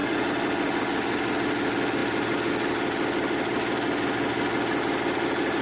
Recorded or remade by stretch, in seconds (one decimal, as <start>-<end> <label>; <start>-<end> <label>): 0.0-5.6 recorded